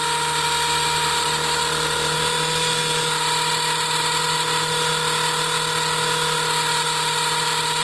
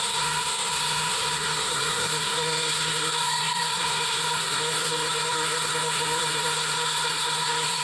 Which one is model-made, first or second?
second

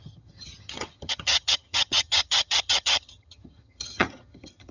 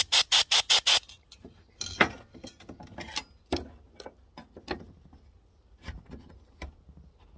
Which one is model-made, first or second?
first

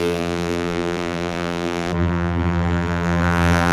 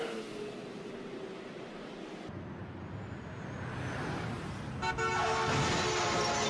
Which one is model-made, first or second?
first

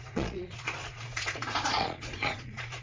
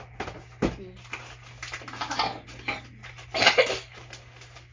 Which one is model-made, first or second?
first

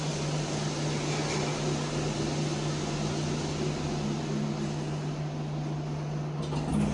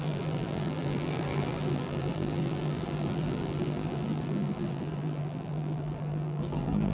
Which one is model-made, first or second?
second